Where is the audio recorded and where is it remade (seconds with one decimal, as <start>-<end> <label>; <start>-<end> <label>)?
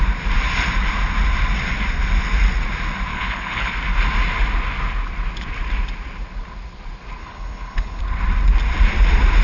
0.0-3.1 recorded; 3.1-3.7 remade; 3.7-7.2 recorded; 7.2-8.0 remade; 8.0-9.4 recorded